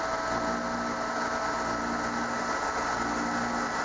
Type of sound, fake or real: real